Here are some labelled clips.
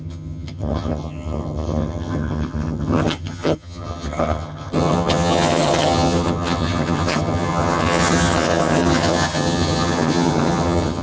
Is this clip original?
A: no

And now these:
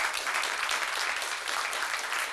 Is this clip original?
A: yes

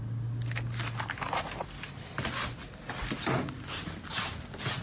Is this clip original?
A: yes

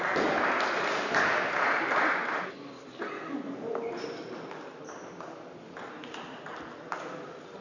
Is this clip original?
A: yes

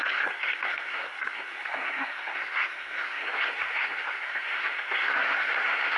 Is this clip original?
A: no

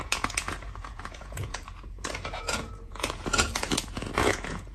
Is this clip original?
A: no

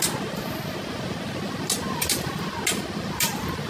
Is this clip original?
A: yes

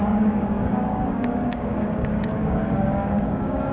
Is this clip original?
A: no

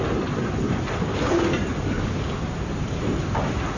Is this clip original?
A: yes